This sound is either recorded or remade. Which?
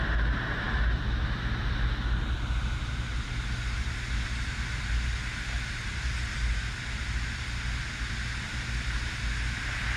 recorded